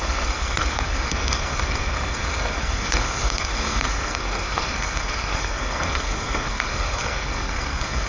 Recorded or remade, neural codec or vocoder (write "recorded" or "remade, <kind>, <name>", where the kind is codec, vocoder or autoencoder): remade, codec, SNAC